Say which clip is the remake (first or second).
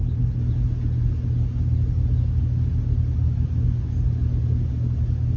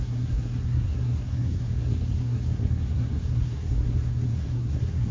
second